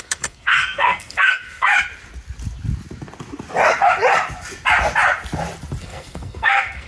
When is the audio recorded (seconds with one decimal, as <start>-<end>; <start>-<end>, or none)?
1.7-5.8